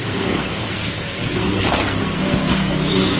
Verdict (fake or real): fake